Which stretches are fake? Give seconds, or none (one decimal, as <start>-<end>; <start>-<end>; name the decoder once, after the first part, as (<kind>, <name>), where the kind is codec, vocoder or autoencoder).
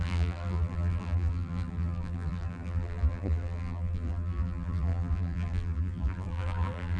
0.0-7.0 (vocoder, BigVGAN v2)